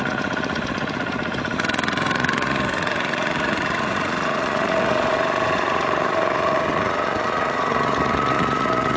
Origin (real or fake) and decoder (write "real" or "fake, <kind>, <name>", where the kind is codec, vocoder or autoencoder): fake, vocoder, Vocos